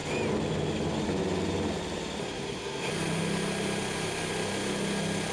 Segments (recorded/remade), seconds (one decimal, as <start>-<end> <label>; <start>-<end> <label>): 0.0-2.2 recorded; 2.2-2.9 remade; 2.9-5.3 recorded